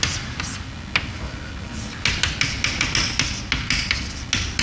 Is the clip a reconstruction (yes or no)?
no